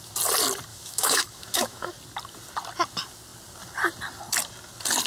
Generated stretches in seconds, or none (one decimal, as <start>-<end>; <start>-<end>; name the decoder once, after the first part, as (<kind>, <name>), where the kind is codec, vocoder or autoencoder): 0.7-1.9 (autoencoder, DAC-VAE)